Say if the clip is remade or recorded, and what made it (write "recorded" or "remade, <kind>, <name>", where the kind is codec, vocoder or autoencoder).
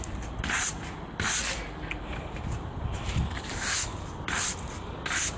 recorded